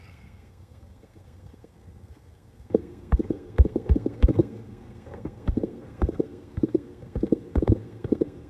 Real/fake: fake